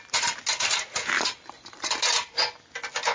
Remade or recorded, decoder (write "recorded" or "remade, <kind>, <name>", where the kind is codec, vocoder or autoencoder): recorded